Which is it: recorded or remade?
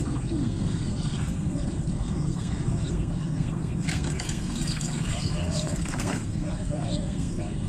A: remade